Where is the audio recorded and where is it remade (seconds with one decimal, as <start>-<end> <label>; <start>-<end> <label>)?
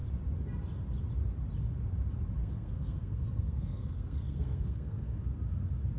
0.0-2.4 recorded; 2.4-5.2 remade; 5.2-6.0 recorded